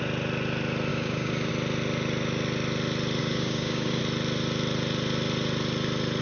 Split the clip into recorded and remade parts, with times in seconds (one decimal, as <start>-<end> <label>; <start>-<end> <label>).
0.0-0.9 recorded; 0.9-1.5 remade; 1.5-3.2 recorded; 3.2-4.0 remade; 4.0-6.2 recorded